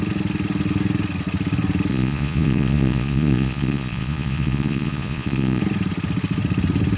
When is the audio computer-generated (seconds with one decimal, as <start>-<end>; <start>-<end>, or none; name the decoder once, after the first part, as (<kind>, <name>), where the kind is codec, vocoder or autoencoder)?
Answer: 1.9-5.6 (vocoder, Vocos)